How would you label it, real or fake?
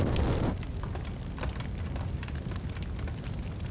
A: real